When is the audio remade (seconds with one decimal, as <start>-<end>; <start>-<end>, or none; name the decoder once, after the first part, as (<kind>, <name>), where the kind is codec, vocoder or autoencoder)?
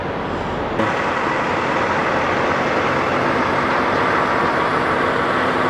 none